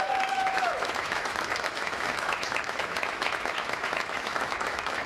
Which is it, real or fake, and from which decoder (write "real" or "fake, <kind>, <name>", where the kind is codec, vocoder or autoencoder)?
fake, autoencoder, DAC-VAE